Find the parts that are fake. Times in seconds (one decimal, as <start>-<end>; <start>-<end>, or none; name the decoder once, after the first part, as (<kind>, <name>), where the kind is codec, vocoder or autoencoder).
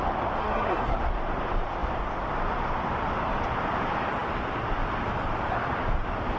0.4-1.0 (codec, SNAC)